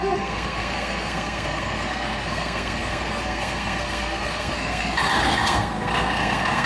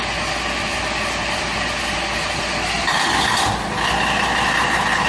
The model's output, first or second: first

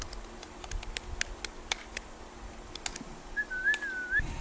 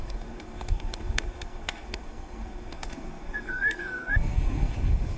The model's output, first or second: second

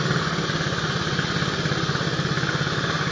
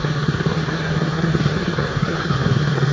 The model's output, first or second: second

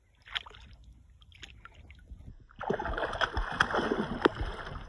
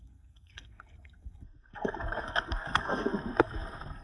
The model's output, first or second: second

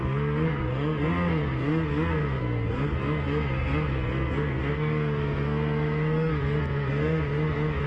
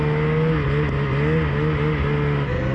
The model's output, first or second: first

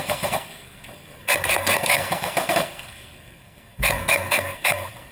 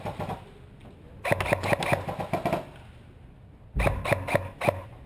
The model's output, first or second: first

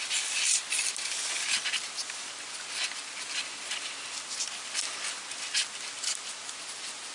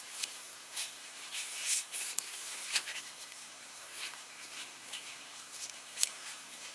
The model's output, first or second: second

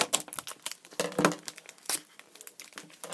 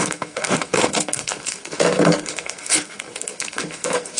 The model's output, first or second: second